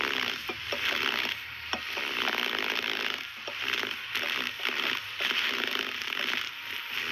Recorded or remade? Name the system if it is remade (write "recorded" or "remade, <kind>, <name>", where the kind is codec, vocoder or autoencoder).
recorded